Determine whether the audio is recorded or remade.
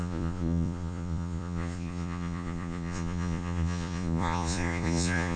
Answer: remade